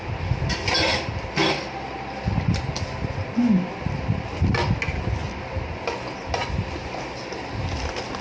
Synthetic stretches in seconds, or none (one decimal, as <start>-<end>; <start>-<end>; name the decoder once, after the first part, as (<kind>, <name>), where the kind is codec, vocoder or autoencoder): 0.9-2.7 (vocoder, BigVGAN v2)